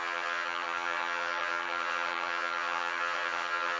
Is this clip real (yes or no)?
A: no